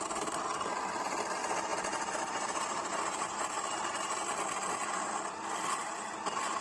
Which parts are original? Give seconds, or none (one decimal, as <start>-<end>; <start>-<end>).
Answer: 0.0-1.7; 3.5-6.6